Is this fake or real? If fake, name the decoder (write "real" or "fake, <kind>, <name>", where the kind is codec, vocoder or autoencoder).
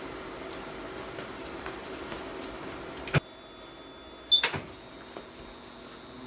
real